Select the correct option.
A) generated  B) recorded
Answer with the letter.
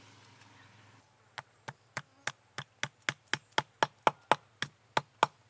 B